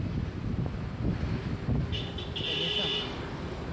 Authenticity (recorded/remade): recorded